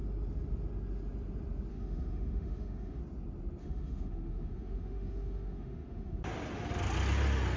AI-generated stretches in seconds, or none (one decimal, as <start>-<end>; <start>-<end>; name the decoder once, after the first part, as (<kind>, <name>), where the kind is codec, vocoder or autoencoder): 1.7-3.0 (autoencoder, DAC-VAE); 3.6-6.2